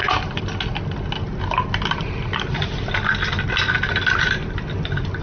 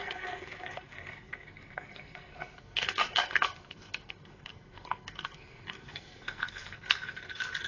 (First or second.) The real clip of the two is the first